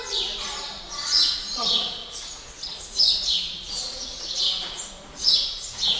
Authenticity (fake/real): fake